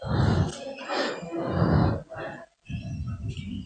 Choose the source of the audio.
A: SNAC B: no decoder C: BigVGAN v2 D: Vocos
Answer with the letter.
B